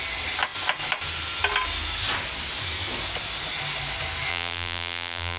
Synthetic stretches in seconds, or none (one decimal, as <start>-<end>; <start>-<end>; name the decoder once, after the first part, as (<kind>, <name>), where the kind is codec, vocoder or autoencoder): 4.3-5.4 (vocoder, BigVGAN v2)